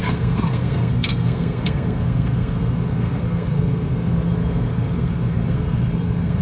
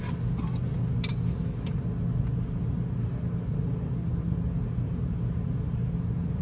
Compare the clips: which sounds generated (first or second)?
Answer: first